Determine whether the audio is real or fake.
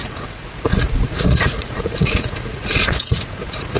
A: fake